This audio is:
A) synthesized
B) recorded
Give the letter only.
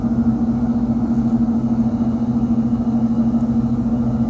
B